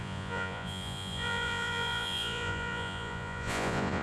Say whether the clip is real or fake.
fake